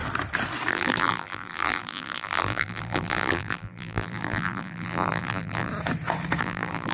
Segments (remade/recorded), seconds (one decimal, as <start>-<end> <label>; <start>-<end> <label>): 0.0-0.7 recorded; 0.7-5.7 remade; 5.7-6.4 recorded; 6.4-6.9 remade